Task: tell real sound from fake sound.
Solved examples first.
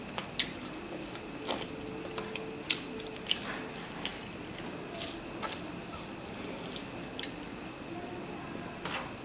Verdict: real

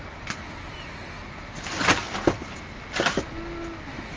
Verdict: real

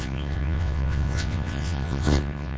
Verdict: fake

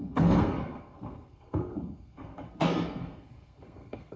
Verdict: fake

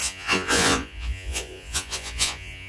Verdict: fake